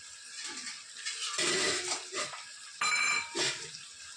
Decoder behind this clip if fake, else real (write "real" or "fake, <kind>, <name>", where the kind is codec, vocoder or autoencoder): real